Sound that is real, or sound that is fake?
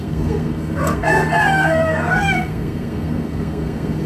fake